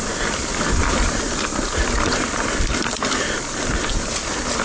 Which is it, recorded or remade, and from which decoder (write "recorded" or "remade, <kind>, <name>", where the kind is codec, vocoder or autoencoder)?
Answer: recorded